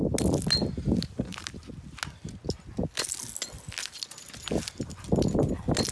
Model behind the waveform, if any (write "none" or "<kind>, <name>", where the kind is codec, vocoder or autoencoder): none